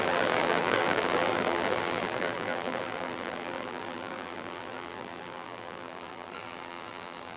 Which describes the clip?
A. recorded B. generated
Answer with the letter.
B